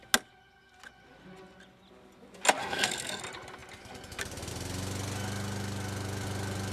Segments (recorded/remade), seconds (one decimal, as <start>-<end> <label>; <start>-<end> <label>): 0.0-2.6 recorded; 2.6-3.2 remade; 3.2-6.7 recorded